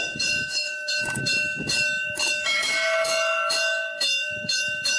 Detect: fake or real fake